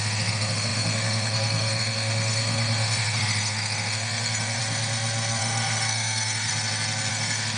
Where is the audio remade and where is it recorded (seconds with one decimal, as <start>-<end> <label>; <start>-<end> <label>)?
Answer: 0.0-4.6 remade; 4.6-5.4 recorded; 5.4-6.5 remade; 6.5-7.1 recorded; 7.1-7.6 remade